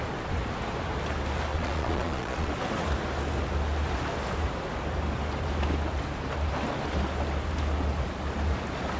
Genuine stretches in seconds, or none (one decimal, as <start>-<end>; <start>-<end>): 0.0-1.5; 2.5-9.0